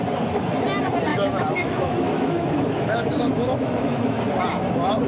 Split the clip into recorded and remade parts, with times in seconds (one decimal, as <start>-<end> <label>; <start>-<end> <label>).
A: 0.0-1.1 recorded; 1.1-4.2 remade; 4.2-5.1 recorded